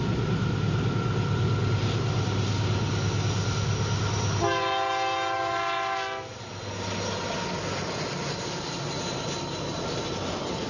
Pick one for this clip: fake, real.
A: real